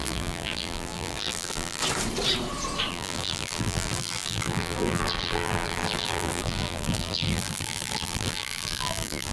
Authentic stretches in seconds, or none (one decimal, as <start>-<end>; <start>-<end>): 1.8-2.9